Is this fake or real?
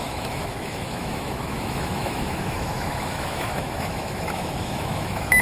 fake